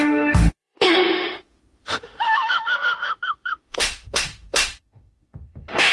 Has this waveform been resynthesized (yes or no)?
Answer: yes